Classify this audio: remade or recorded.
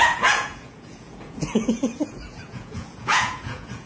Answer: remade